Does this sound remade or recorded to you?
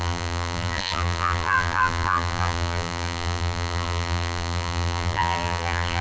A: remade